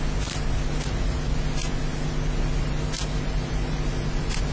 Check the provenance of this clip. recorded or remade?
recorded